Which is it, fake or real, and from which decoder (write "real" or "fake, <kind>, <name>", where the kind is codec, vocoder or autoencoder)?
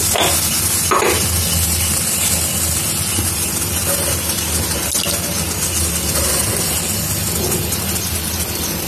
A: real